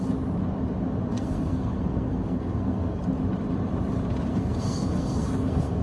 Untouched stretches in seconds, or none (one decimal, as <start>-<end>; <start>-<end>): 0.0-1.1; 3.0-4.3

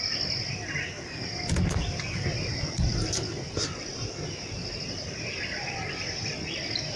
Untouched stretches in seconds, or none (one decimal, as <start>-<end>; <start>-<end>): 0.0-7.0

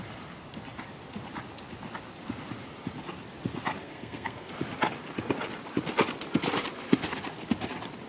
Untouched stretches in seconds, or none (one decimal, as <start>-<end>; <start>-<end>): 0.0-3.8; 4.5-8.1

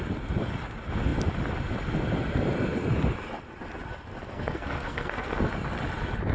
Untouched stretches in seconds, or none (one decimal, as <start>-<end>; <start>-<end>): 0.0-4.2; 5.5-6.3